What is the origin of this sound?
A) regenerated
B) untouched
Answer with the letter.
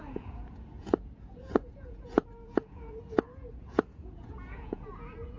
A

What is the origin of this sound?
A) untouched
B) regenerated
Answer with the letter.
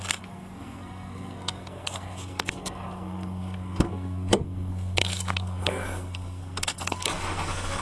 B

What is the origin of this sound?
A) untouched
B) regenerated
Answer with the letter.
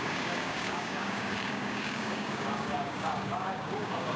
B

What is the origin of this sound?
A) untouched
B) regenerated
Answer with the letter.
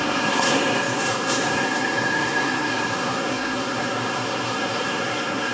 B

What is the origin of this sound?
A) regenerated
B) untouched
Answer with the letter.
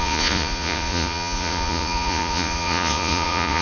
A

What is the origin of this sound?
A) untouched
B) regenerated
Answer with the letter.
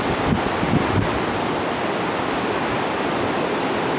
A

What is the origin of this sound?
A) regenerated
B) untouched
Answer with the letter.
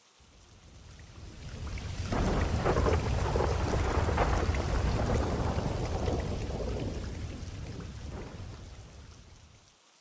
B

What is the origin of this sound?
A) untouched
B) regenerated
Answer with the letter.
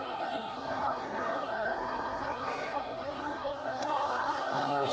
B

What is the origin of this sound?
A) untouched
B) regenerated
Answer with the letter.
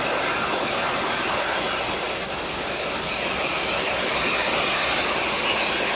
A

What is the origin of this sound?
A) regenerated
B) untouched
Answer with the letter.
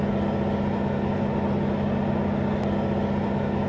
B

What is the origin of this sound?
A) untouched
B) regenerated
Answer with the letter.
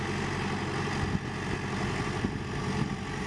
A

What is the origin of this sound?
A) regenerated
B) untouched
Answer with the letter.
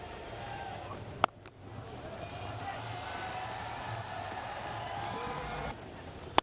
B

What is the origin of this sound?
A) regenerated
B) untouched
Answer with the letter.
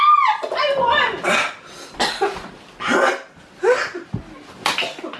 B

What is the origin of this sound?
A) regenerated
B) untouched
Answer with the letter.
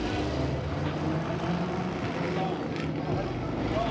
B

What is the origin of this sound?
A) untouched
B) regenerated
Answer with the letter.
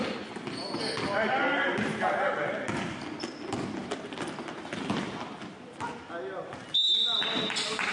A